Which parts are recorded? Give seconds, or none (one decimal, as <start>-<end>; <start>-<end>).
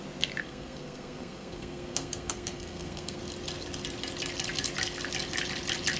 0.0-0.4; 3.2-6.0